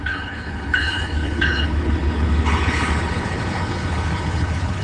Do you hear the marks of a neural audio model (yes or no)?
yes